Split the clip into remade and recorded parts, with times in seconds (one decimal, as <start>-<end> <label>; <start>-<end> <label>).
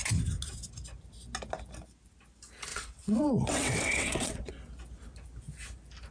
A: 0.0-2.7 recorded; 2.7-4.5 remade; 4.5-6.1 recorded